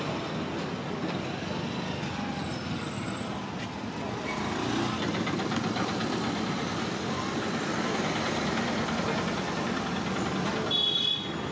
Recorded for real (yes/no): yes